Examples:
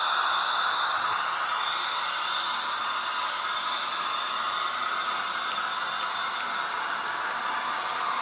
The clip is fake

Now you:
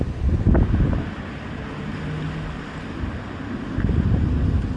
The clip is real